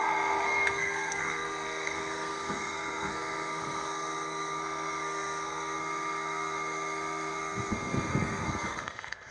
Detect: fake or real fake